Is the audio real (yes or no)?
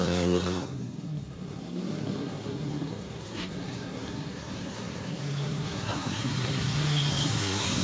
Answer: no